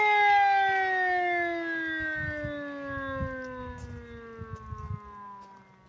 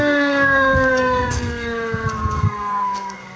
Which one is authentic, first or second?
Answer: first